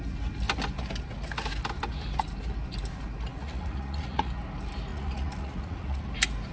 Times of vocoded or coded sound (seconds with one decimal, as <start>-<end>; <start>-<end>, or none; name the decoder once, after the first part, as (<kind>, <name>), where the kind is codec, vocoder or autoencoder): 3.3-4.3 (vocoder, Vocos); 4.9-6.1